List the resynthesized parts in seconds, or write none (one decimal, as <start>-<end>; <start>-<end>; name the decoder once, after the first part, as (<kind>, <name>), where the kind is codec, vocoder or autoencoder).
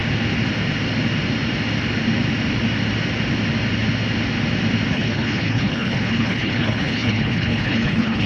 4.9-8.3 (codec, HILCodec)